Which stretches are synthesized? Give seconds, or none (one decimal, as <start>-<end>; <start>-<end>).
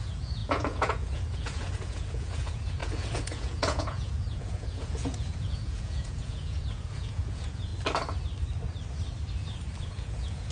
0.0-7.7; 9.8-10.5